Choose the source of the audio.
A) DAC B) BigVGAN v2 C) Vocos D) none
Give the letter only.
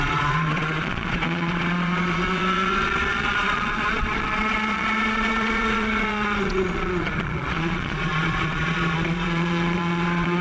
C